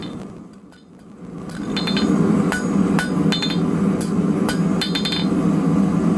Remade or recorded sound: recorded